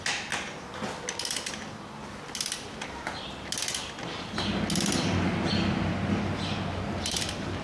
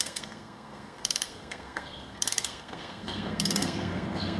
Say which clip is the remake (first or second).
second